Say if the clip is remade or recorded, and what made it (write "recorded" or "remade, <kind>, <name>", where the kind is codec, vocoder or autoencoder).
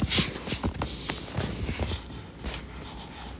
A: recorded